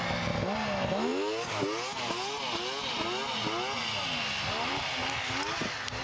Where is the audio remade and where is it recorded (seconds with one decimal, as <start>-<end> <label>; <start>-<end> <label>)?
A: 0.0-6.0 recorded